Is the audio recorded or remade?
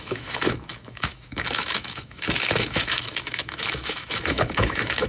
remade